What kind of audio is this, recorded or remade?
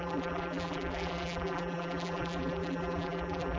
remade